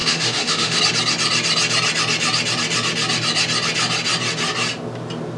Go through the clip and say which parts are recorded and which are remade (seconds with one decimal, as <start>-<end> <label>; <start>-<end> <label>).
0.0-0.8 remade; 0.8-5.4 recorded